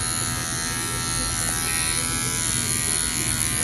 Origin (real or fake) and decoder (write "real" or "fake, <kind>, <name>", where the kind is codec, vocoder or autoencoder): real